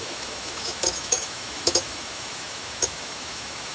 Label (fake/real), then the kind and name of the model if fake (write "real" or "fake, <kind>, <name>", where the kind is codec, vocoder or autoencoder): fake, autoencoder, DAC-VAE